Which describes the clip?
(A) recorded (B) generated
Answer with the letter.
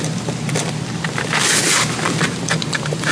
B